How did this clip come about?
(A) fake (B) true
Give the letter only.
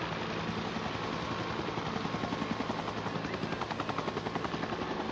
B